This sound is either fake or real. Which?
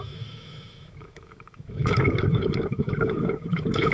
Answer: fake